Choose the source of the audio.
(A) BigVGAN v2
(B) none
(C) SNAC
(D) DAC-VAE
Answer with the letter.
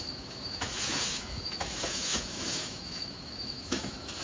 D